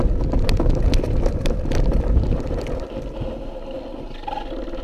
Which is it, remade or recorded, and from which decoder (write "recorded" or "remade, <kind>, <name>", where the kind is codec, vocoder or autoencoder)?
recorded